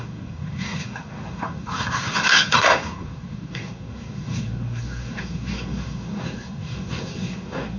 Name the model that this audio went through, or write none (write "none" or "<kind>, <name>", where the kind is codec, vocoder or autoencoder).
codec, SNAC